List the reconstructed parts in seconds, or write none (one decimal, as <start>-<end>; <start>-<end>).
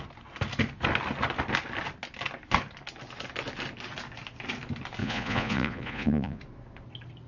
5.0-6.4